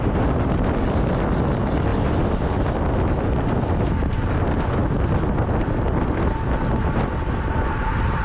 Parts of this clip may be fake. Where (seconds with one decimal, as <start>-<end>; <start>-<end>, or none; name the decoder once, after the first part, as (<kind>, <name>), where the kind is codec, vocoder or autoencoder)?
none